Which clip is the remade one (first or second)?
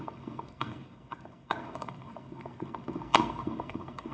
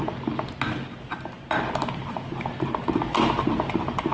first